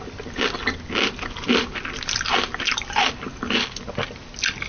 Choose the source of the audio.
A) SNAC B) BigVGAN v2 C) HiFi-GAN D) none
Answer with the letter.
D